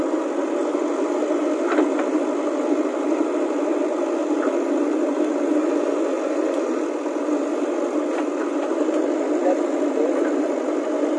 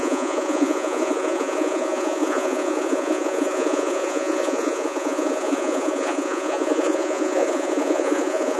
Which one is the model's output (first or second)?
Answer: second